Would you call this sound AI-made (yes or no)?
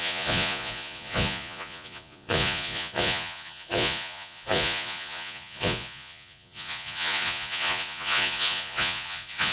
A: yes